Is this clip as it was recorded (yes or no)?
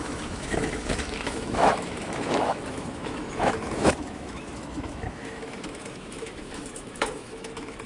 no